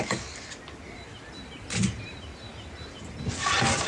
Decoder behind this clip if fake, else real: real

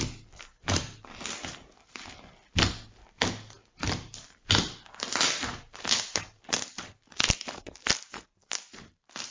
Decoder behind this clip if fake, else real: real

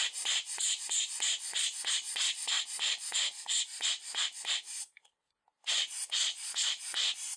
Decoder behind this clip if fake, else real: real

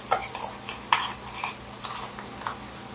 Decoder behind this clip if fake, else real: real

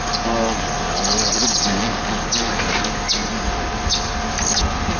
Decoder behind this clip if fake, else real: real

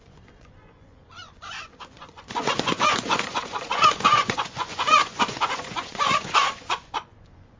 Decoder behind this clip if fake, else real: fake, vocoder, Vocos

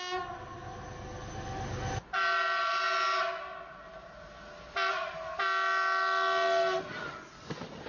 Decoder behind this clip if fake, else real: real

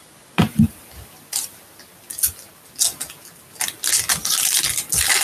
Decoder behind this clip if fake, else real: real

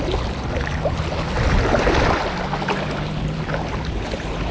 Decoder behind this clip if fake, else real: real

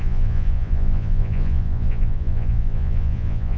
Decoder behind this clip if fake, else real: fake, vocoder, Vocos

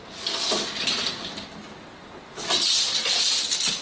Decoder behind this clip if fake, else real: real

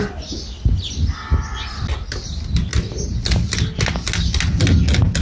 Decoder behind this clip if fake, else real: real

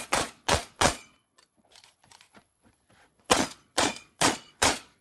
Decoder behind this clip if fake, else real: fake, vocoder, Vocos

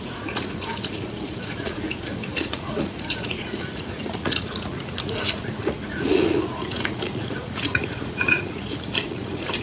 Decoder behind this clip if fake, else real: fake, vocoder, Vocos